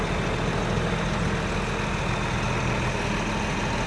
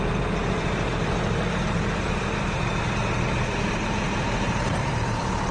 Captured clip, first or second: first